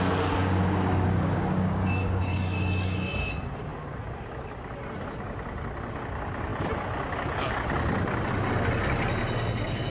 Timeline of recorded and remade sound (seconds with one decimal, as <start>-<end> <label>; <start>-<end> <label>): 0.0-0.4 recorded; 0.4-3.3 remade; 3.3-9.9 recorded